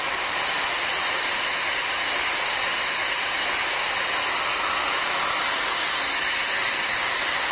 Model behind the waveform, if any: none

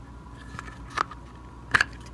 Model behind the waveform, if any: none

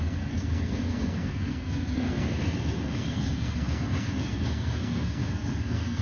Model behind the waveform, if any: codec, SNAC